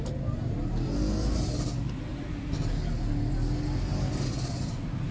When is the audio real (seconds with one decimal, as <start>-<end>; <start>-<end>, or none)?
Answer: 0.0-5.1